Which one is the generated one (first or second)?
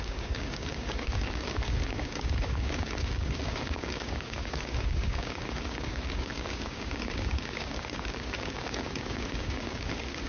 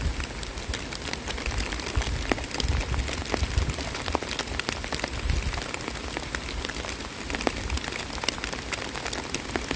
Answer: first